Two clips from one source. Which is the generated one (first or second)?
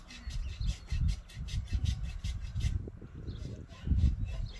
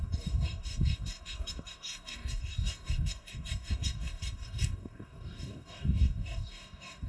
second